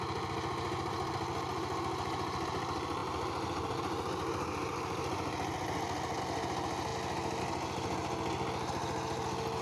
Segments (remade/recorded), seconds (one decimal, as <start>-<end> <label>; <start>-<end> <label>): 0.0-9.6 recorded